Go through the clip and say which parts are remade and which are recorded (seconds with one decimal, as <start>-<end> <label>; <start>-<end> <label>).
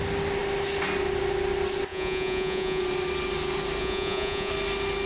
0.0-1.9 recorded; 1.9-2.8 remade; 2.8-3.8 recorded; 3.8-4.5 remade; 4.5-5.1 recorded